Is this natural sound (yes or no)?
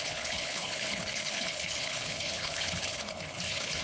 no